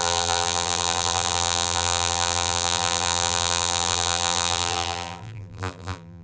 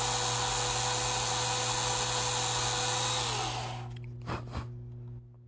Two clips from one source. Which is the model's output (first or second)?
first